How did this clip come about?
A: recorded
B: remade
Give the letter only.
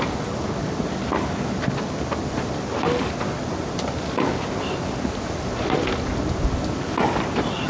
A